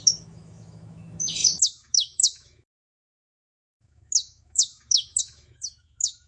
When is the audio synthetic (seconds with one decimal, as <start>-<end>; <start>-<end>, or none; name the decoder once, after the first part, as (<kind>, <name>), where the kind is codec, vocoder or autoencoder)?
0.0-6.3 (autoencoder, DAC-VAE)